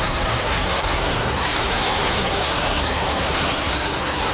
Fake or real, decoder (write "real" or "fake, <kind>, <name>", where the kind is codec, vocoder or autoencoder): fake, codec, SNAC